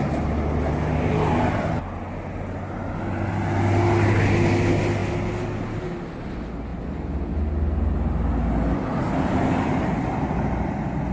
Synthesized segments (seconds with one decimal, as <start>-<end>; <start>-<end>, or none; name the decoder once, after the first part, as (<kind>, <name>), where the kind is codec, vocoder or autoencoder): none